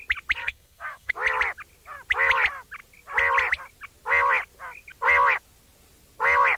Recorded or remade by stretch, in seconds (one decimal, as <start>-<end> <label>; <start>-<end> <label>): 0.0-0.4 recorded; 0.4-1.1 remade; 1.1-6.6 recorded